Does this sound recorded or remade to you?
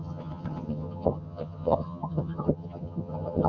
remade